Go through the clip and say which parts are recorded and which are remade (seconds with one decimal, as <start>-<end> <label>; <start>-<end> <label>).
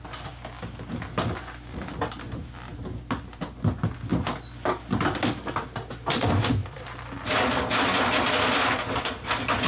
0.0-9.7 recorded